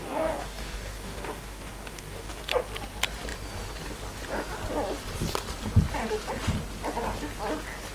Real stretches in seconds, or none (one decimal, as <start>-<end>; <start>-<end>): 2.4-7.9